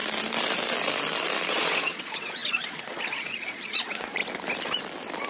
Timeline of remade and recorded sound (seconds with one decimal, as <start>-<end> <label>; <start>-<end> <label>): 0.0-1.5 recorded; 1.5-4.2 remade; 4.2-5.3 recorded